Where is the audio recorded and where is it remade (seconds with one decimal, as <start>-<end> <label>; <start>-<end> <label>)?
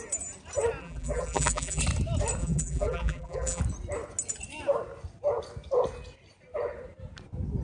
0.0-0.8 recorded; 0.8-1.8 remade; 1.8-2.4 recorded; 2.4-3.6 remade; 3.6-7.6 recorded